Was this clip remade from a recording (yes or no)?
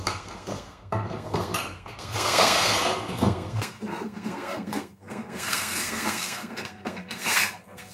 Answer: yes